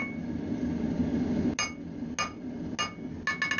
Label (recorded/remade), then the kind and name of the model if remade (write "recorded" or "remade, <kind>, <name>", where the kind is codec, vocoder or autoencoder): recorded